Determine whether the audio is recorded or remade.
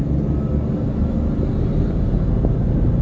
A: recorded